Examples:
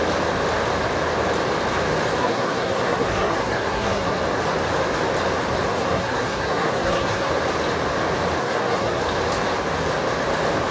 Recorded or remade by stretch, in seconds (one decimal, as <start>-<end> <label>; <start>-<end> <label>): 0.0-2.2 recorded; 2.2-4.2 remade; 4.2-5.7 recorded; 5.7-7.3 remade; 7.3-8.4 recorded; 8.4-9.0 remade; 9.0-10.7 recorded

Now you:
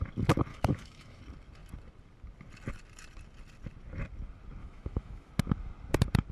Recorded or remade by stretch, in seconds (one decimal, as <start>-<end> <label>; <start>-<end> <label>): 0.0-0.5 recorded; 0.5-1.2 remade; 1.2-4.6 recorded; 4.6-5.3 remade; 5.3-6.3 recorded

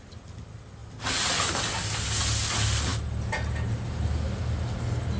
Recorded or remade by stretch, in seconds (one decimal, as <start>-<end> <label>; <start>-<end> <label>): 0.0-5.2 recorded